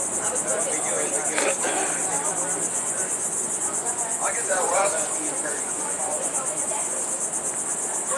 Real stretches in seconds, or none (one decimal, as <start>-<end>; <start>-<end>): 0.0-2.7; 7.0-8.2